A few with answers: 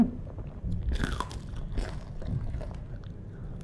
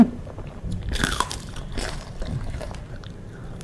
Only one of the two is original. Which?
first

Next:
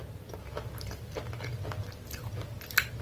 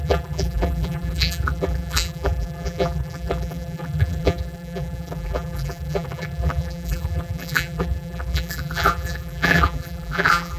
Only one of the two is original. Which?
first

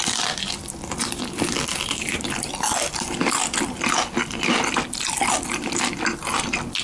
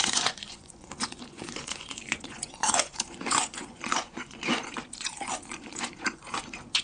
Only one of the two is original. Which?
first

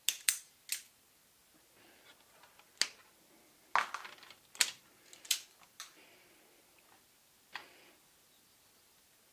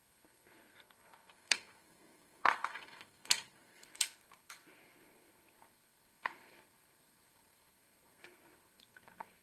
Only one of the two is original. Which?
first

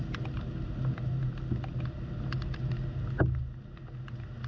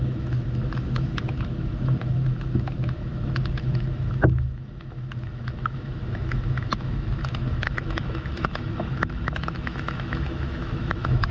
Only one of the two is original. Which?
first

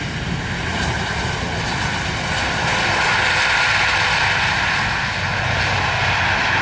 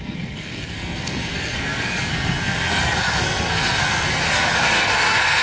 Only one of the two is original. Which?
first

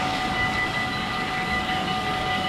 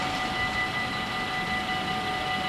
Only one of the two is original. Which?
second